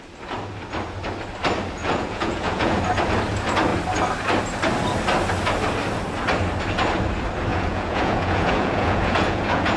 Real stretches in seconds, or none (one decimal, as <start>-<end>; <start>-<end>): 0.0-1.8; 2.8-7.5